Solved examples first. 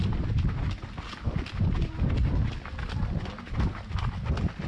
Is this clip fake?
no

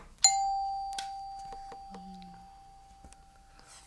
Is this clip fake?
no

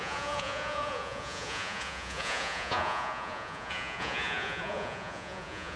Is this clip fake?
yes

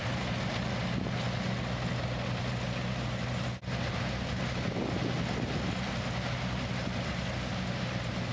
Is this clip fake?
no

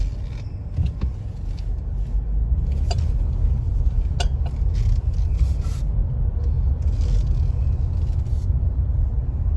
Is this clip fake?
no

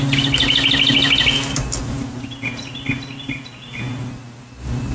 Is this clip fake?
no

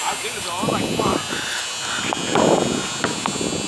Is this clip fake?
no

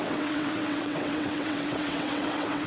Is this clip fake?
yes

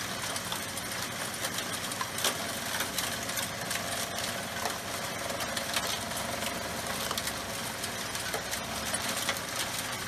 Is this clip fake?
no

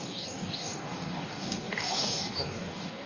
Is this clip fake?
yes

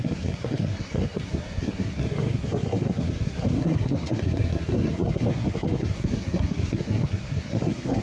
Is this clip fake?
yes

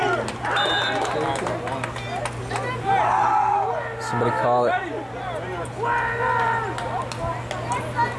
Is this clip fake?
no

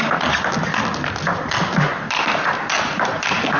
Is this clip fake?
no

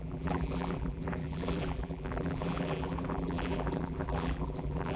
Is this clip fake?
yes